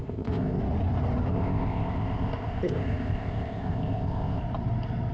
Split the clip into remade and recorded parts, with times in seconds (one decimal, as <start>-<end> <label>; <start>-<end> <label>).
0.0-0.6 remade; 0.6-1.3 recorded; 1.3-4.4 remade; 4.4-5.1 recorded